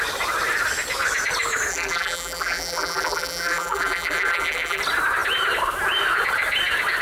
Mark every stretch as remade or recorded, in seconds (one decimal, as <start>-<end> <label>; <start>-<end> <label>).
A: 0.0-1.7 recorded; 1.7-4.8 remade; 4.8-7.0 recorded

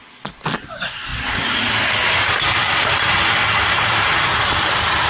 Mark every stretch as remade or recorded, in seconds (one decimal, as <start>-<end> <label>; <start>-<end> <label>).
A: 0.0-0.6 recorded; 0.6-1.1 remade; 1.1-3.6 recorded; 3.6-5.1 remade

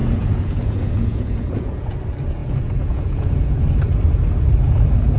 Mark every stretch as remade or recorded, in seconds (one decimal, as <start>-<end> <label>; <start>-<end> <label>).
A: 0.0-2.0 remade; 2.0-2.4 recorded; 2.4-3.6 remade; 3.6-5.2 recorded

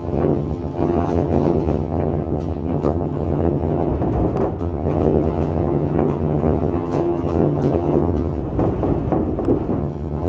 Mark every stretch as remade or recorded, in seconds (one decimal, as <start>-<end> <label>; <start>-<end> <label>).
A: 0.0-3.9 remade; 3.9-4.6 recorded; 4.6-8.4 remade; 8.4-9.8 recorded; 9.8-10.3 remade